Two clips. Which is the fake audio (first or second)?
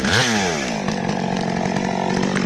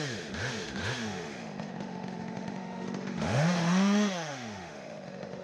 second